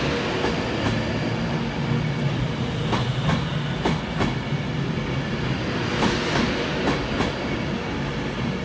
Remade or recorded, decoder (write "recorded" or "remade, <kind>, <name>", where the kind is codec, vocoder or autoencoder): recorded